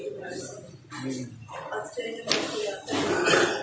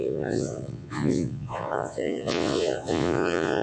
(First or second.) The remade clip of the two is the second